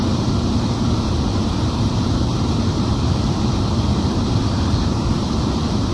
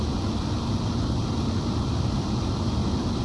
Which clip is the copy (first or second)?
first